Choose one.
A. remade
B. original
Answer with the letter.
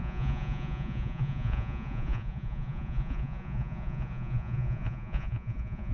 A